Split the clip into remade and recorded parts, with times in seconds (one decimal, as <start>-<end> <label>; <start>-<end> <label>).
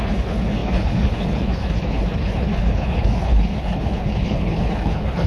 0.0-5.3 remade